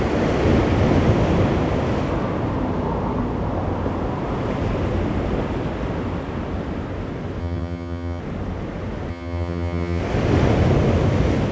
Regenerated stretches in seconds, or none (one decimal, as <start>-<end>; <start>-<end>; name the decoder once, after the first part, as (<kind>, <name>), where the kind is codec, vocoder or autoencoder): 7.4-8.2 (vocoder, HiFi-GAN); 9.1-10.0